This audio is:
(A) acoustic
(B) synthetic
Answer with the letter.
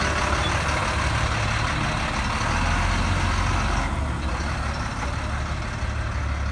A